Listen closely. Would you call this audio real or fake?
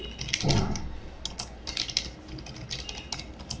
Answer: real